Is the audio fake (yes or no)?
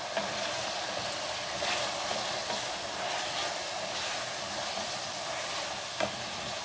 no